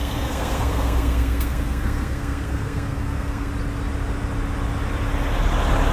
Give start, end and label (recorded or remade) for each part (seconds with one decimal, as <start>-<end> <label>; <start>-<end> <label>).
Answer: 0.0-3.5 remade; 3.5-5.9 recorded

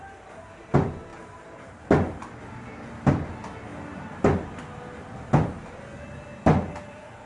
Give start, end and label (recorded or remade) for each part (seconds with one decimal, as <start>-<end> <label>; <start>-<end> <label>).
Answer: 0.0-7.3 recorded